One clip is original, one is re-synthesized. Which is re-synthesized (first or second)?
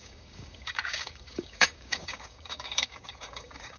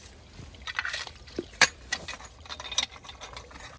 first